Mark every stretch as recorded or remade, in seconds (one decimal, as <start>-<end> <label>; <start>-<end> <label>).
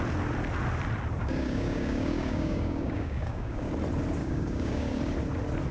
0.0-1.2 recorded; 1.2-3.7 remade; 3.7-4.2 recorded; 4.2-5.0 remade; 5.0-5.7 recorded